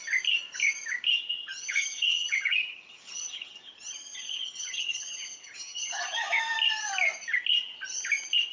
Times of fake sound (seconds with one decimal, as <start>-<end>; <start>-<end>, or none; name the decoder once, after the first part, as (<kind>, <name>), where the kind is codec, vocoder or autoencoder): 1.3-6.4 (vocoder, HiFi-GAN)